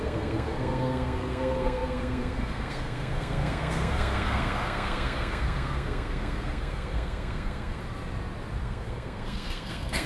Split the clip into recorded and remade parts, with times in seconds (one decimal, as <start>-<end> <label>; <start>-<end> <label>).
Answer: 0.0-7.8 remade; 7.8-8.6 recorded; 8.6-10.1 remade